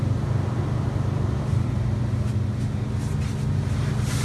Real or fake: real